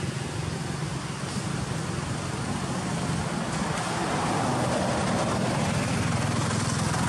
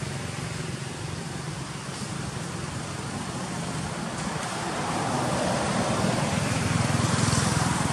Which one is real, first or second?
first